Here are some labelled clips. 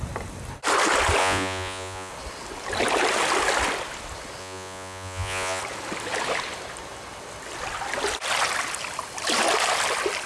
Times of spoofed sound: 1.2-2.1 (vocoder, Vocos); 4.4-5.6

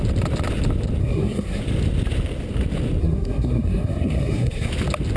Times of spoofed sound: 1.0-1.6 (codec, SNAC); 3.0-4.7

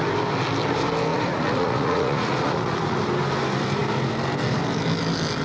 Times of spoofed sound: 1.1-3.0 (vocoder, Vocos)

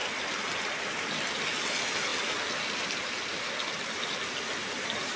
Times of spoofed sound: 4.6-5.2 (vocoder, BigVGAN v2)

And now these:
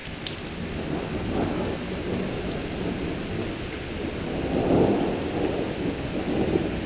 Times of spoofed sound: none